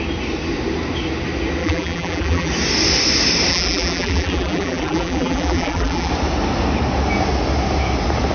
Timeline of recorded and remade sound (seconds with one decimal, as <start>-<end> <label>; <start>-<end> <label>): 0.0-1.6 recorded; 1.6-2.5 remade; 2.5-3.5 recorded; 3.5-6.1 remade; 6.1-8.3 recorded